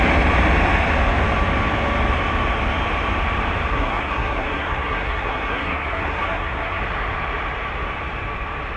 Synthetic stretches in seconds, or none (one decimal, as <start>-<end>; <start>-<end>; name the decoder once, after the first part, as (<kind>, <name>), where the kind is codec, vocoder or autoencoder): 3.7-6.8 (codec, SNAC)